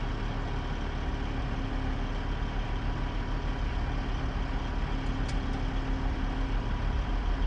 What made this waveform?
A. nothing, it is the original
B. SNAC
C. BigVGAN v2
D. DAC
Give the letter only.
A